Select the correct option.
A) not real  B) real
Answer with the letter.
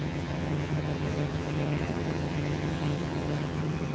A